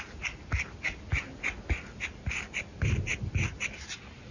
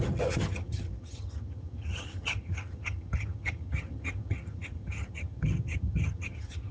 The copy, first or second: second